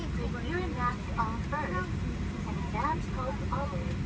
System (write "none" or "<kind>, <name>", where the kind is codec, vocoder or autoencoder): none